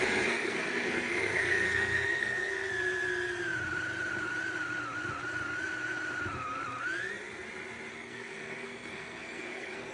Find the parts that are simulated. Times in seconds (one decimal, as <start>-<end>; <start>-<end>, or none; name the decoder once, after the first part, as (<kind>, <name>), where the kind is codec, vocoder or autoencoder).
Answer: 0.0-2.7 (codec, SNAC); 7.9-9.9